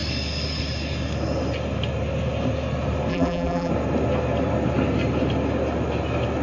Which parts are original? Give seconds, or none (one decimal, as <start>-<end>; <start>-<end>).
0.0-3.1; 3.7-6.4